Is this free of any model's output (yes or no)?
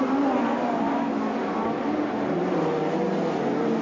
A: yes